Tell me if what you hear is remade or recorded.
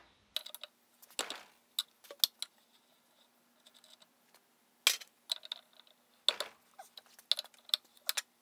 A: recorded